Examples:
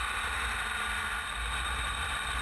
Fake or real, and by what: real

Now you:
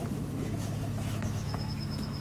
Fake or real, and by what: fake, autoencoder, DAC-VAE